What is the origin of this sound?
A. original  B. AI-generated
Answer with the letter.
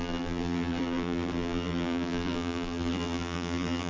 B